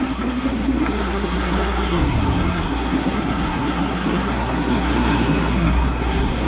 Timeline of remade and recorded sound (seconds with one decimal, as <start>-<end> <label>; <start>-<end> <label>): 0.0-6.5 remade